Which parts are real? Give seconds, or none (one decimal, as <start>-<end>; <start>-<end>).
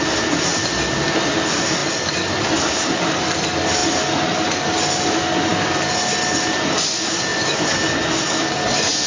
0.0-7.3; 8.1-9.1